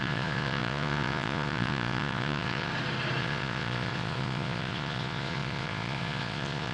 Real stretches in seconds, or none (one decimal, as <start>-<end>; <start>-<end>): 2.7-3.2